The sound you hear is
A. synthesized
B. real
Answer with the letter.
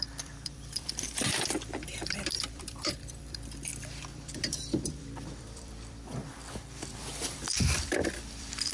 A